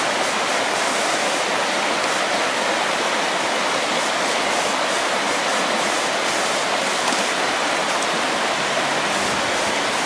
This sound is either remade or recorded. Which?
recorded